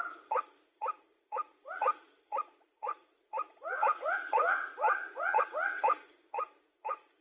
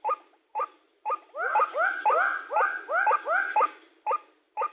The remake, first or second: first